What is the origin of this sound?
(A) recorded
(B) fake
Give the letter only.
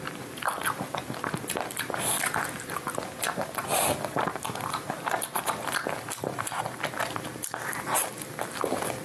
A